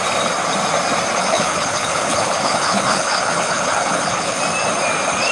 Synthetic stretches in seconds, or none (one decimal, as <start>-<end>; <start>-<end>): 1.2-4.4